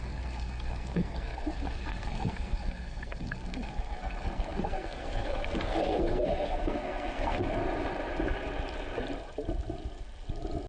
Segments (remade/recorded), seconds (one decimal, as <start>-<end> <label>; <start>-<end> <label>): 0.0-7.6 remade; 7.6-10.7 recorded